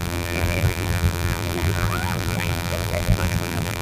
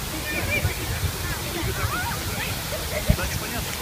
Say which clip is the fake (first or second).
first